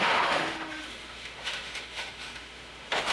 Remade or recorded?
remade